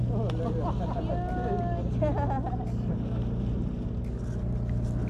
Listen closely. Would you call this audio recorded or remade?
recorded